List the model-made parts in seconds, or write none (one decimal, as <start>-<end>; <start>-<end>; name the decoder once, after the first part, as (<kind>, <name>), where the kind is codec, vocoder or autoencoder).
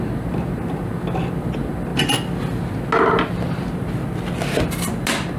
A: none